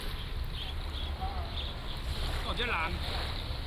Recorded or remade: recorded